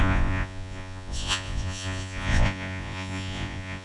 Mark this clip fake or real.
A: fake